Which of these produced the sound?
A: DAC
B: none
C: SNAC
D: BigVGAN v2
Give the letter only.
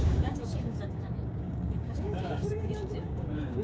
A